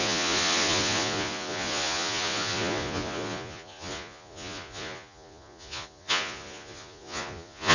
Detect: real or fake fake